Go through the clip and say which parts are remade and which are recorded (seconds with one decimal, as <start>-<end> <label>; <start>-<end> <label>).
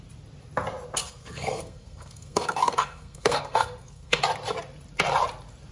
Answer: 0.0-1.0 recorded; 1.0-4.2 remade; 4.2-5.7 recorded